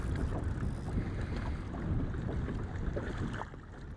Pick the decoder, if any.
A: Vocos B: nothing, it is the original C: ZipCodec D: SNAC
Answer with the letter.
B